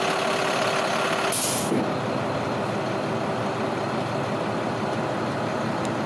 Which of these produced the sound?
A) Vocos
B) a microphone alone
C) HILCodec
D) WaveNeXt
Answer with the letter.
B